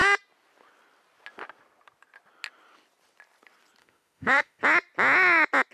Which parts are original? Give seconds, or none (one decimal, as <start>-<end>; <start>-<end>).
0.0-3.8; 4.6-5.7